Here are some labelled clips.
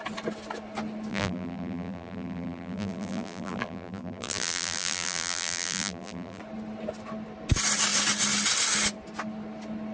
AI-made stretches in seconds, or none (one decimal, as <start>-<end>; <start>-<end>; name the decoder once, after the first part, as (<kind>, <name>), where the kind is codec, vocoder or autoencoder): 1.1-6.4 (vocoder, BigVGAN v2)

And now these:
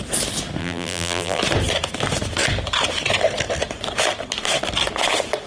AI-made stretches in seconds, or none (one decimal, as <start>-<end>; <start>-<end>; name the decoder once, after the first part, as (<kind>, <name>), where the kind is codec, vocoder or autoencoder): 0.6-1.4 (vocoder, BigVGAN v2)

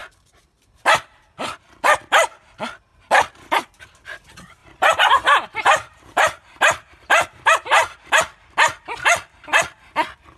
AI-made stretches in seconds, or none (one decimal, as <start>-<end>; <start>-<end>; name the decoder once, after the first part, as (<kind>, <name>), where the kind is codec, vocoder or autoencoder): 0.0-1.5 (vocoder, BigVGAN v2); 4.6-8.1

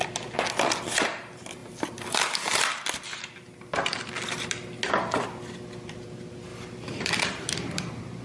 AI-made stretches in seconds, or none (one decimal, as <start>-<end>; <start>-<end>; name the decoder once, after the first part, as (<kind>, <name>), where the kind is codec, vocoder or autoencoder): 6.5-7.1 (vocoder, BigVGAN v2)